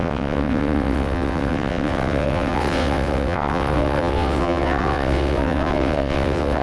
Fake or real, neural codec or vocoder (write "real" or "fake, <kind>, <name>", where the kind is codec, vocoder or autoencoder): fake, vocoder, WaveNeXt